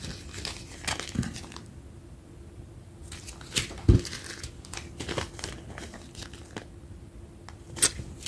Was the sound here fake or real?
real